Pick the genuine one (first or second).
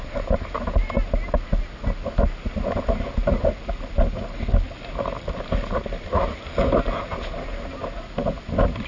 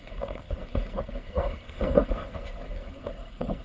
first